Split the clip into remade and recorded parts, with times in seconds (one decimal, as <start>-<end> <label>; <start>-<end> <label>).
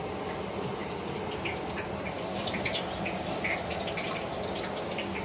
0.0-5.2 recorded